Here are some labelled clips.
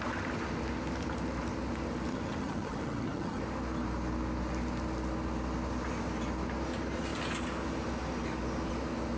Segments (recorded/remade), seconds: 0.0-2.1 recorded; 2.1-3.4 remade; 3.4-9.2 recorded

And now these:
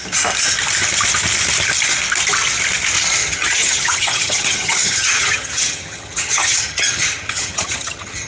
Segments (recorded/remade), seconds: 0.0-3.2 recorded; 3.2-8.3 remade